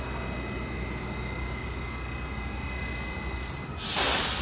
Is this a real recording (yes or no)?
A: yes